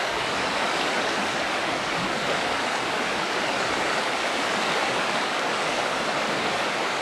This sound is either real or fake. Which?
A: fake